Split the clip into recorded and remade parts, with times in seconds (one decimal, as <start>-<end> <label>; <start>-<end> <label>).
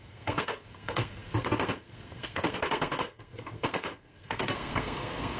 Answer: 0.0-5.4 remade